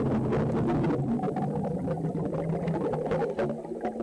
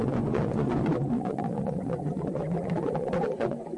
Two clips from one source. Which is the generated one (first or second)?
second